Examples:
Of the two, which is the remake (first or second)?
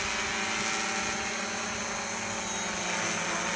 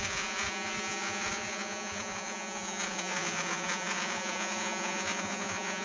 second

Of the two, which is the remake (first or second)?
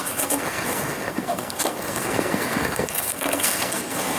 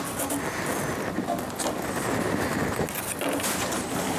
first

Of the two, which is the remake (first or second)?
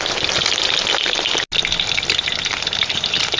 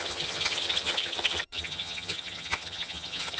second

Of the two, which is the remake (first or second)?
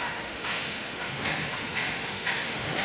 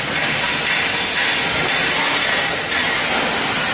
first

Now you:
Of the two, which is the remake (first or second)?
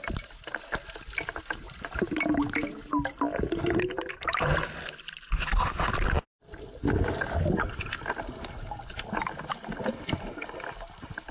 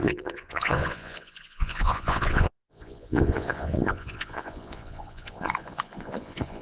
second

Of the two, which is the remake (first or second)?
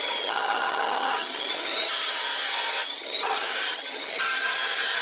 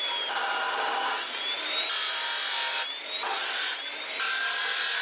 first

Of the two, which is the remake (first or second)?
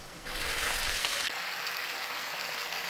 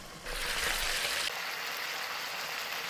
first